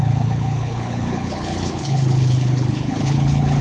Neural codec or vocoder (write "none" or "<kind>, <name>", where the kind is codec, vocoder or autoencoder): codec, HILCodec